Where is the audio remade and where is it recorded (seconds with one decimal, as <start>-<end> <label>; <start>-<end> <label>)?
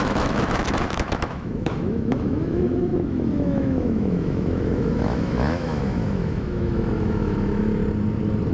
0.0-7.8 remade; 7.8-8.5 recorded